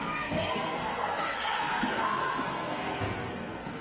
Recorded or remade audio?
remade